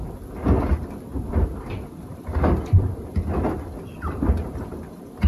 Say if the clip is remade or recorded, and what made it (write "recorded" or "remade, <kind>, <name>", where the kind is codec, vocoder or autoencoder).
recorded